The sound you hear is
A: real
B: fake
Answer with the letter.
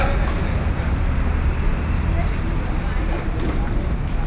A